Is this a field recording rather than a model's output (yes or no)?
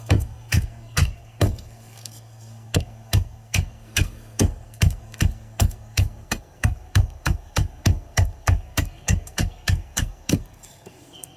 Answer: no